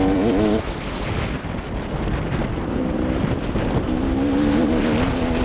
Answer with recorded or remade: recorded